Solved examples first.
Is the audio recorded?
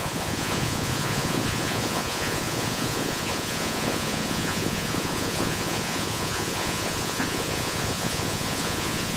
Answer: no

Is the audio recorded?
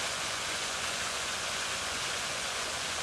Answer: no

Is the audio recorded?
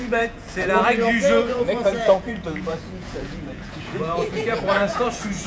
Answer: no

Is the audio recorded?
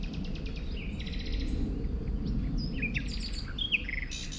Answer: yes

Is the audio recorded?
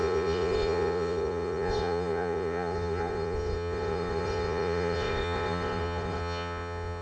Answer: no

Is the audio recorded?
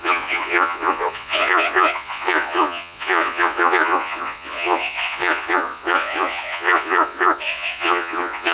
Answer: no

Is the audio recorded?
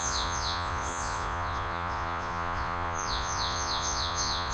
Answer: no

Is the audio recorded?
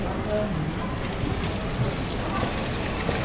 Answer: yes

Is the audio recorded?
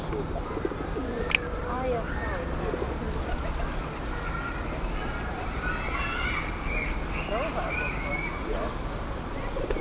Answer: yes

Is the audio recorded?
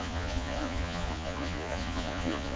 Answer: no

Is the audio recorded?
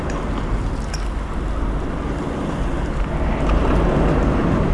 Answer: yes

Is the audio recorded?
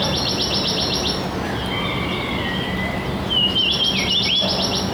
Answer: yes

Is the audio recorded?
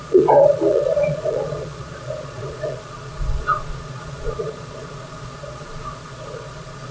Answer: no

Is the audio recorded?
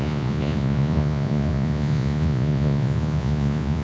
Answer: no